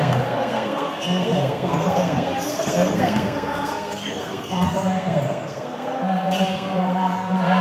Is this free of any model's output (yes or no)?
no